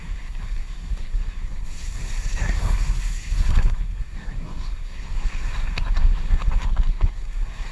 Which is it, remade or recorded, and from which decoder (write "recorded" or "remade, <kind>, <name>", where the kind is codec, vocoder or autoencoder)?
remade, codec, SNAC